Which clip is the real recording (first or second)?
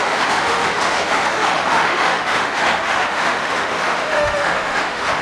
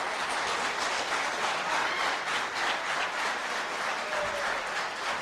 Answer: second